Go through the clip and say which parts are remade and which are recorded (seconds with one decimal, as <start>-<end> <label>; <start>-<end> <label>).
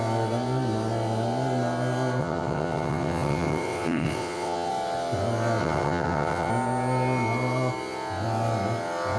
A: 0.0-2.2 recorded; 2.2-4.7 remade; 4.7-5.6 recorded; 5.6-6.5 remade; 6.5-9.2 recorded